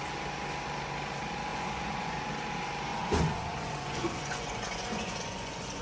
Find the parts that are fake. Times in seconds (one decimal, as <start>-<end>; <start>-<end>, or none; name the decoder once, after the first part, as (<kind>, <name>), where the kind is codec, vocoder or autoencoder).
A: 1.5-2.3 (vocoder, Vocos); 2.9-5.8